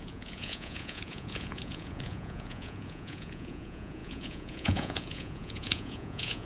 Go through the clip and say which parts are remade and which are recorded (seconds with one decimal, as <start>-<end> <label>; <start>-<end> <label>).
0.0-6.5 remade